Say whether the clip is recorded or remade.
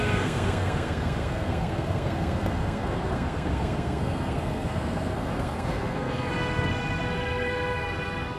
remade